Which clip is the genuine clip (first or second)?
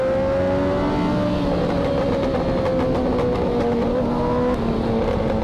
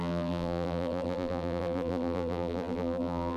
first